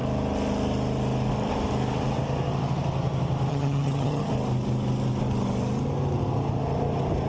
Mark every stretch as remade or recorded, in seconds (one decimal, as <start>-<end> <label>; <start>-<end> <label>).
0.0-3.5 recorded; 3.5-4.3 remade; 4.3-7.3 recorded